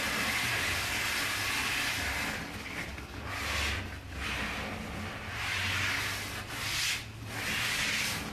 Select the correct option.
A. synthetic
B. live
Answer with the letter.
B